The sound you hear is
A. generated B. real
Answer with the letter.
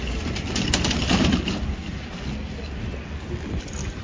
B